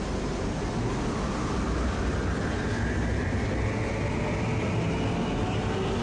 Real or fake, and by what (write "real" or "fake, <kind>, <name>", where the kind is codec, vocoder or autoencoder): real